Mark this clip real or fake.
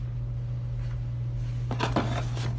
real